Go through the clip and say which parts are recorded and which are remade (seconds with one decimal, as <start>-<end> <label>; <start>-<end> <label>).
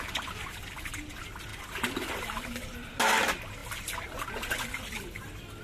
0.0-5.6 recorded